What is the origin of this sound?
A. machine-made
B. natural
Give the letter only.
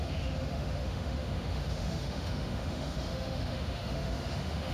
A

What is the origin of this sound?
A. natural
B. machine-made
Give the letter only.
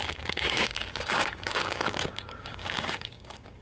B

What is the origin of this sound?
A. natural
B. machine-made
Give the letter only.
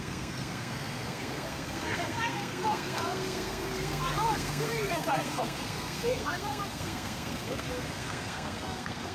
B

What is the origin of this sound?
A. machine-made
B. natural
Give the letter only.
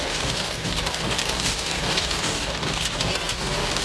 A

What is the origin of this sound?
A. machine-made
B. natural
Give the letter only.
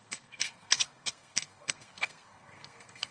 A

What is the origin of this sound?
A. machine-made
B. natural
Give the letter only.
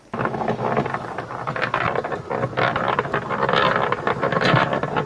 B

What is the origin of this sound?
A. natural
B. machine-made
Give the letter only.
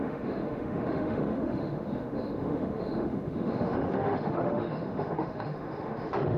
B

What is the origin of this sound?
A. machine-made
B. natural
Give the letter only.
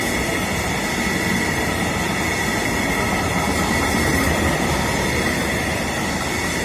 B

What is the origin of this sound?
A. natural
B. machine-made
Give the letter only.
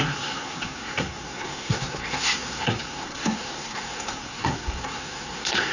B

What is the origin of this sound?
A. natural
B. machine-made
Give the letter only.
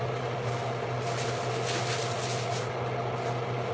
A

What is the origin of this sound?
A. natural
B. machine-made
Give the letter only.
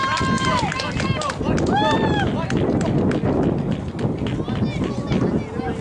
A